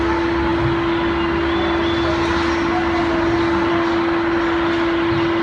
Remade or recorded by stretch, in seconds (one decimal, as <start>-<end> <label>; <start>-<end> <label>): 0.0-5.4 recorded